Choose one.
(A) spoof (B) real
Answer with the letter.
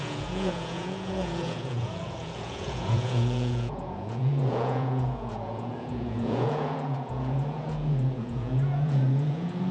A